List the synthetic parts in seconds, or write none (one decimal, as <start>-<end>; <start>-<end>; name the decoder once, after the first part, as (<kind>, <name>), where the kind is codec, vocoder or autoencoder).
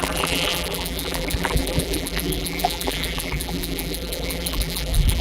0.0-5.2 (vocoder, BigVGAN v2)